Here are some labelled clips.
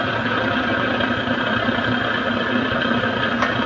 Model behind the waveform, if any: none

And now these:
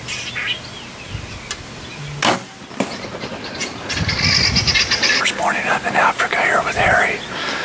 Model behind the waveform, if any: none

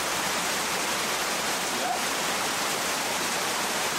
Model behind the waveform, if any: vocoder, BigVGAN v2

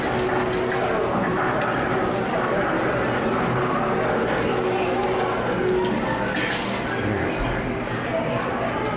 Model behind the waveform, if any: none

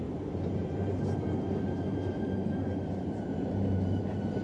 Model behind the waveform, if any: vocoder, BigVGAN v2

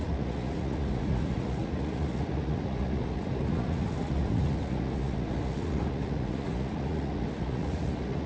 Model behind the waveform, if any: vocoder, Vocos